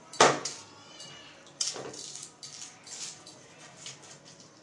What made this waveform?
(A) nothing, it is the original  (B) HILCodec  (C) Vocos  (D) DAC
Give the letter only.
A